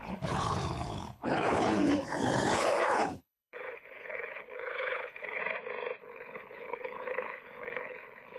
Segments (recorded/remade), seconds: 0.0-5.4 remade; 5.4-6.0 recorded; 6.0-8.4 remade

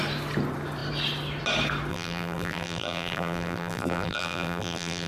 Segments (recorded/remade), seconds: 0.0-1.9 recorded; 1.9-5.1 remade

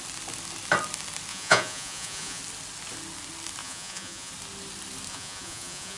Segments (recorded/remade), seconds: 0.0-1.3 recorded; 1.3-2.4 remade; 2.4-3.6 recorded; 3.6-4.3 remade; 4.3-5.1 recorded; 5.1-6.0 remade

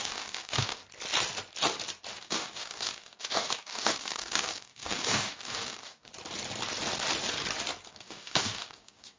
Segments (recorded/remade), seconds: 0.0-0.8 remade; 0.8-2.1 recorded; 2.1-6.1 remade; 6.1-7.9 recorded; 7.9-9.2 remade

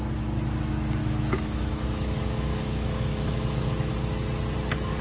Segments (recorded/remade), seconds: 0.0-1.0 recorded; 1.0-3.9 remade; 3.9-5.0 recorded